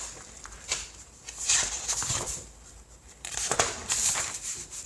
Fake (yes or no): yes